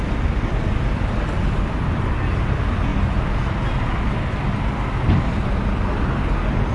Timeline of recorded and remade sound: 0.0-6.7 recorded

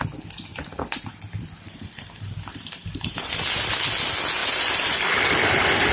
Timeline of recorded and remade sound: 0.0-0.5 recorded; 0.5-3.8 remade; 3.8-4.4 recorded; 4.4-5.5 remade; 5.5-5.9 recorded

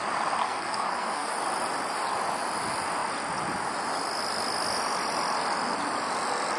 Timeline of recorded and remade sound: 0.0-0.4 recorded; 0.4-1.3 remade; 1.3-6.6 recorded